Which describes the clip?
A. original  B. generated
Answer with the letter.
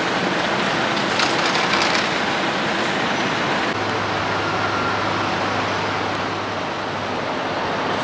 A